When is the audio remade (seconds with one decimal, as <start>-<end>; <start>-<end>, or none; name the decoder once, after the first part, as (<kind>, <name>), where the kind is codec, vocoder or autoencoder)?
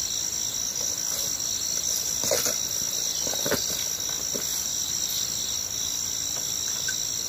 none